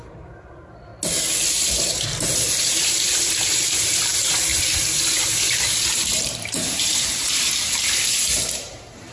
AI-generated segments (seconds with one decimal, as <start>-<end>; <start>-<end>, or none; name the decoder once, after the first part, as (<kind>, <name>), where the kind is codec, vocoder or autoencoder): 0.0-0.9 (vocoder, BigVGAN v2); 1.5-9.1